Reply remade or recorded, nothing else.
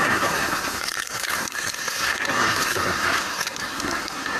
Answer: remade